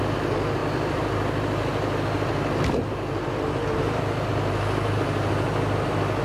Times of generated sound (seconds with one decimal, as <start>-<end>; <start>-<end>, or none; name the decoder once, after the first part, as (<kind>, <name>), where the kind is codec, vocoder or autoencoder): none